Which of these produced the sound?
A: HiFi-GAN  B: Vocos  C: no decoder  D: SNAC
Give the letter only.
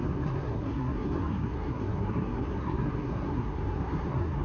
D